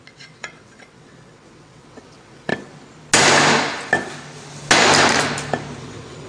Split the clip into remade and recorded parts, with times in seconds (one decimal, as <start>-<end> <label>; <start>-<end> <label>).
0.0-2.5 remade; 2.5-5.8 recorded; 5.8-6.3 remade